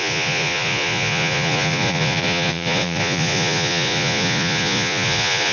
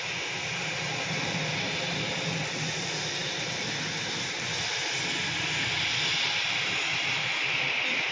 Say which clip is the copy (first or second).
first